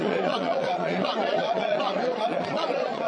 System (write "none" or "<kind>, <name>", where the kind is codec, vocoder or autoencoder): vocoder, Vocos